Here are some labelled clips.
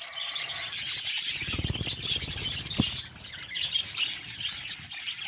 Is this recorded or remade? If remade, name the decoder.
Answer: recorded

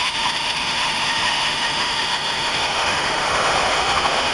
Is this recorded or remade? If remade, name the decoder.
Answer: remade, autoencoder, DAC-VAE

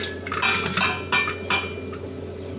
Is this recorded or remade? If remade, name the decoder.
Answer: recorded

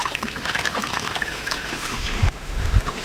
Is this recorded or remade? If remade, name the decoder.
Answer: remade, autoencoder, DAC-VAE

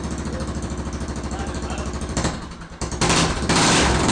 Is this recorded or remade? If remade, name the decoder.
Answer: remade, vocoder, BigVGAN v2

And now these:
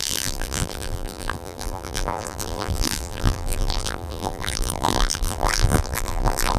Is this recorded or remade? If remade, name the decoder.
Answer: remade, vocoder, BigVGAN v2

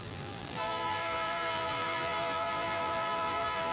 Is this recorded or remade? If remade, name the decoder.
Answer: remade, vocoder, BigVGAN v2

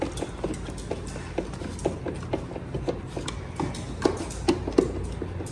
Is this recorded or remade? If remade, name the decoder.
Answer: recorded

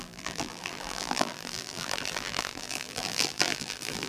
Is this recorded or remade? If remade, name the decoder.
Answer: remade, vocoder, BigVGAN v2